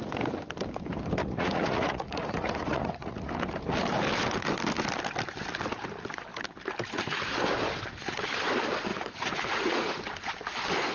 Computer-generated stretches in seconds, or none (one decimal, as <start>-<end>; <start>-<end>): 1.2-3.3; 8.9-10.0